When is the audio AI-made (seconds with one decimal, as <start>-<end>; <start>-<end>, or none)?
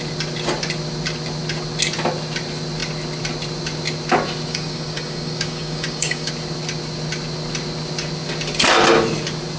4.5-6.3